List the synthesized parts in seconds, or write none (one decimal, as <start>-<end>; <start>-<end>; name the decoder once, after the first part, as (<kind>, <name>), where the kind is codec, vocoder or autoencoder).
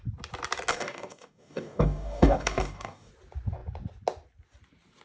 0.7-3.1 (codec, DAC)